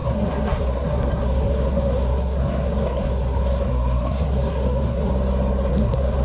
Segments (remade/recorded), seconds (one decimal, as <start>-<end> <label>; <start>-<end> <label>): 0.0-5.1 remade; 5.1-5.7 recorded; 5.7-6.2 remade